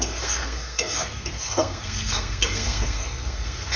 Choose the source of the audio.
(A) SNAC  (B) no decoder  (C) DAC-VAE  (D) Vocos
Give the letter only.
A